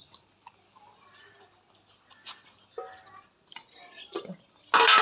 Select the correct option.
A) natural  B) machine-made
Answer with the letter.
A